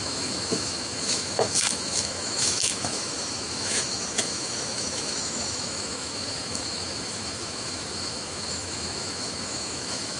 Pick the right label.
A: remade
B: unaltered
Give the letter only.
A